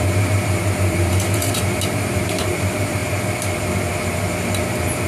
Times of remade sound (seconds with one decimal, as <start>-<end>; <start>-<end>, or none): 0.0-3.0